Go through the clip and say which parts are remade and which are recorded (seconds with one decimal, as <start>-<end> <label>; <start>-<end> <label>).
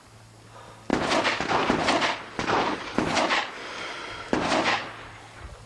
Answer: 0.0-5.7 recorded